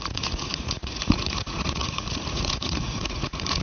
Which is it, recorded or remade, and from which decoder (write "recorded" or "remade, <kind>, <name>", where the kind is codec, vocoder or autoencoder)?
remade, vocoder, Vocos